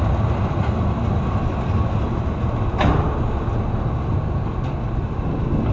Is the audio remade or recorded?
recorded